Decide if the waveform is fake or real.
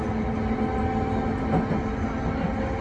real